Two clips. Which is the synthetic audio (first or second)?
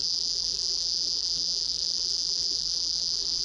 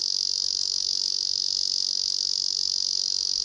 first